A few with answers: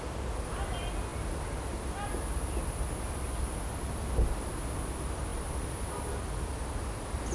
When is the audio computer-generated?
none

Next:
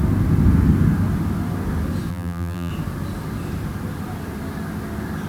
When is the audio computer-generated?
2.1-2.7 (vocoder, BigVGAN v2)

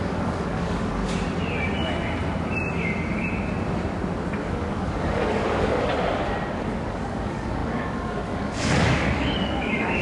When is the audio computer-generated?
0.0-1.0 (codec, DAC); 4.4-5.9; 6.5-10.0

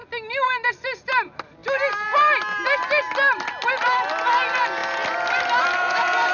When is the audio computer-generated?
none

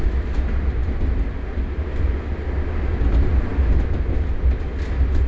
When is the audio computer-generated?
none

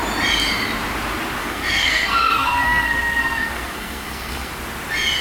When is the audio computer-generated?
1.4-4.5 (codec, SNAC)

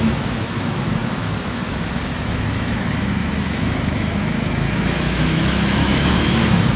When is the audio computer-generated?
0.0-6.8 (autoencoder, DAC-VAE)

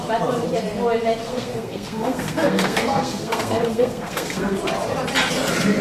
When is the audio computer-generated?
1.2-4.6 (codec, SNAC)